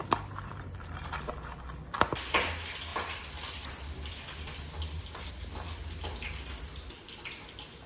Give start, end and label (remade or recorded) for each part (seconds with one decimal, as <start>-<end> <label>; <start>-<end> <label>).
0.0-1.3 remade; 1.3-2.9 recorded; 2.9-5.3 remade; 5.3-7.9 recorded